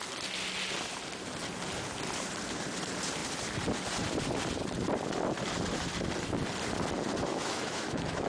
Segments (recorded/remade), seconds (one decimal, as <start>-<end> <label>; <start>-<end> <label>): 0.0-7.3 recorded; 7.3-8.3 remade